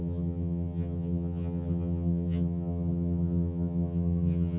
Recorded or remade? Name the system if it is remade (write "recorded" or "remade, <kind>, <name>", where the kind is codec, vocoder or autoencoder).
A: remade, vocoder, HiFi-GAN